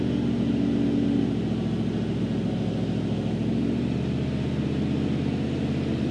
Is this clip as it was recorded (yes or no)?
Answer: yes